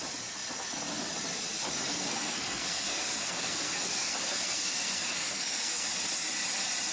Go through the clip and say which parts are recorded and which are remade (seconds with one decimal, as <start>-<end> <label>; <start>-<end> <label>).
0.0-1.8 recorded; 1.8-5.9 remade; 5.9-6.9 recorded

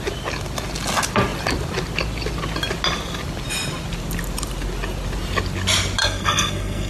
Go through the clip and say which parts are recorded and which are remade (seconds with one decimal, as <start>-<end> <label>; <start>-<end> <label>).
0.0-6.0 recorded; 6.0-6.9 remade

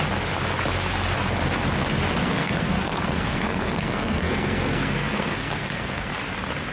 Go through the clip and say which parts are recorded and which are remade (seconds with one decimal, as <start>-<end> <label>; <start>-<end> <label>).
0.0-2.2 recorded; 2.2-6.1 remade; 6.1-6.7 recorded

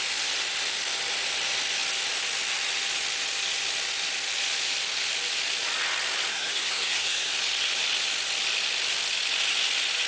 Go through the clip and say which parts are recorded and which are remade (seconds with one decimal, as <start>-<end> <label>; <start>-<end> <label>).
0.0-6.3 recorded; 6.3-7.3 remade; 7.3-10.1 recorded

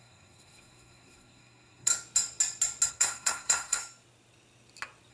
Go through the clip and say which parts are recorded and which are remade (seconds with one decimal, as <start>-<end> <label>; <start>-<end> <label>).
0.0-1.9 remade; 1.9-2.9 recorded; 2.9-3.8 remade; 3.8-5.1 recorded